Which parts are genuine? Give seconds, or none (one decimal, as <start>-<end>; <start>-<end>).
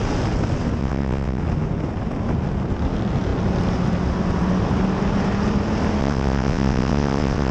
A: 0.0-0.8; 1.4-6.0